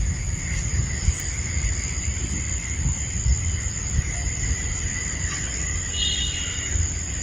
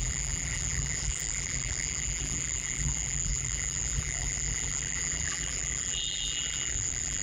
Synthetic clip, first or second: second